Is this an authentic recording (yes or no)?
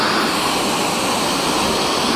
yes